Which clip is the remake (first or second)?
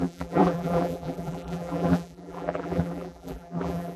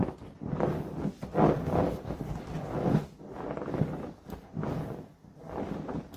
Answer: first